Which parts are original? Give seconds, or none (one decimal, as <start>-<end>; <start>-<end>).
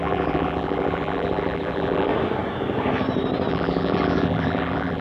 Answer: 2.1-3.5